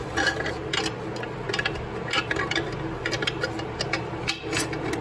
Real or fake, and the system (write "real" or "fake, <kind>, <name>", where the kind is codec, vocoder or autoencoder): real